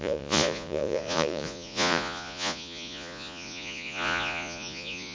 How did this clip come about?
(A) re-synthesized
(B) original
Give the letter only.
A